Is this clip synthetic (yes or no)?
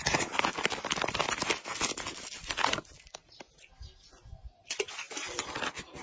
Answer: no